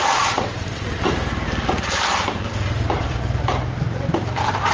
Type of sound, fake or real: fake